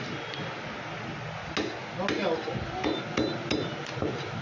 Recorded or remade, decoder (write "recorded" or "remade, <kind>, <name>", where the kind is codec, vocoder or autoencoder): recorded